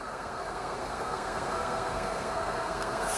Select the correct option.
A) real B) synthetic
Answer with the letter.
B